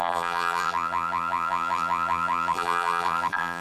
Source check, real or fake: fake